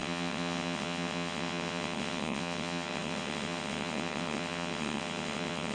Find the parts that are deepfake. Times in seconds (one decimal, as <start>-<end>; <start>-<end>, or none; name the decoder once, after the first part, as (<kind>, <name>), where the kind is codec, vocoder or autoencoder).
0.0-5.7 (vocoder, WaveNeXt)